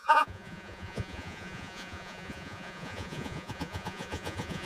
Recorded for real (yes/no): no